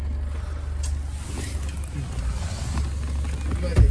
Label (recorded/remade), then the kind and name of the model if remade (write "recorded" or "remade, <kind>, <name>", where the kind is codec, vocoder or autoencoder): recorded